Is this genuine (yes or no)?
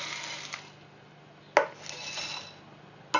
yes